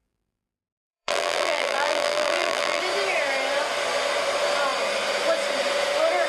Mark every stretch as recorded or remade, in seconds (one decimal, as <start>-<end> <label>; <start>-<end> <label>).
0.0-2.8 remade; 2.8-6.3 recorded